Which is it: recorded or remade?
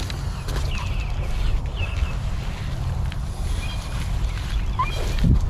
recorded